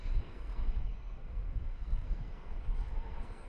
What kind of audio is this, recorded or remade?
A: remade